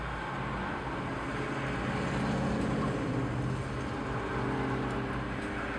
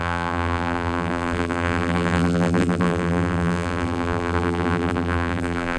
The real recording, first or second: first